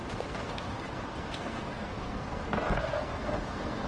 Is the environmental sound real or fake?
fake